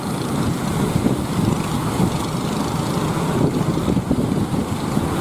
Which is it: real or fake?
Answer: fake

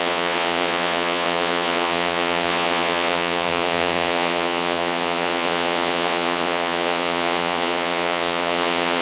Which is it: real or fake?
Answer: fake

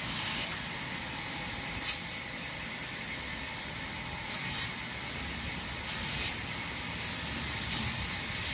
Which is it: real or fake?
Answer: real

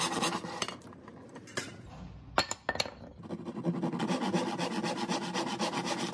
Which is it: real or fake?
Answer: real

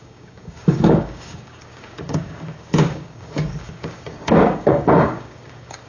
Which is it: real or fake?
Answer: fake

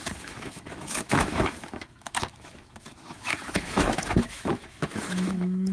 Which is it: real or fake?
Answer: fake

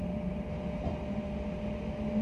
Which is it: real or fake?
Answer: real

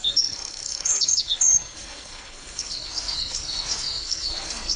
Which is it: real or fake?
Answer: fake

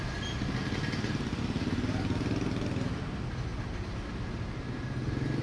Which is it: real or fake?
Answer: real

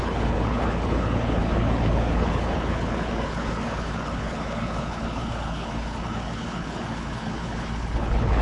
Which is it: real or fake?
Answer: fake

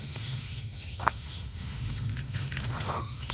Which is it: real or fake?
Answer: fake